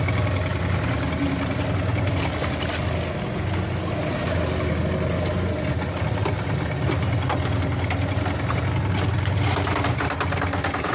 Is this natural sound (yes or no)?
yes